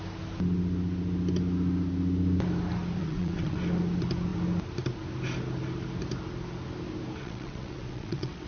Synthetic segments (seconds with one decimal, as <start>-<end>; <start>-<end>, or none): 3.0-3.6; 7.2-8.5